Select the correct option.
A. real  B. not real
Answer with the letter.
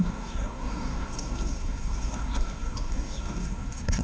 B